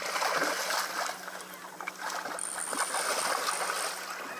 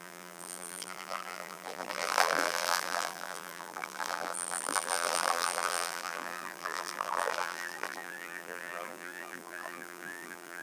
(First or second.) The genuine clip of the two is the first